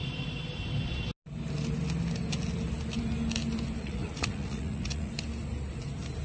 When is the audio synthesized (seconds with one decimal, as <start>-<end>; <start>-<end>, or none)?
3.8-5.1